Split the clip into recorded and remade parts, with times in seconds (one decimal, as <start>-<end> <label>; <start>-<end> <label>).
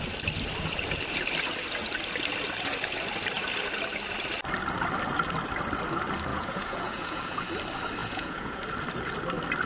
0.0-6.3 recorded; 6.3-7.5 remade; 7.5-8.0 recorded; 8.0-8.6 remade; 8.6-9.7 recorded